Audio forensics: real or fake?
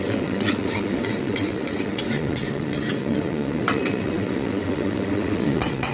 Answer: fake